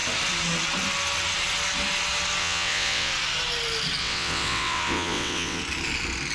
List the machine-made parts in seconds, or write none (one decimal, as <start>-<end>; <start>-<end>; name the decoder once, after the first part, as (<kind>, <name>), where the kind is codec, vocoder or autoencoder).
2.4-3.1 (vocoder, WaveNeXt); 4.0-5.6